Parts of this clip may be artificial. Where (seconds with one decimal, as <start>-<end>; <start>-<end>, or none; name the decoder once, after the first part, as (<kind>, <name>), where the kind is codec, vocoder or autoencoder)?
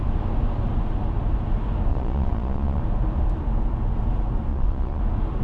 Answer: 1.9-2.8 (vocoder, Vocos); 4.5-5.0